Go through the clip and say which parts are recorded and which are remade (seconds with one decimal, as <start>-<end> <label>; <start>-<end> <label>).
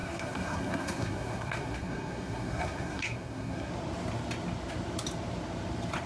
0.0-3.7 remade; 3.7-6.1 recorded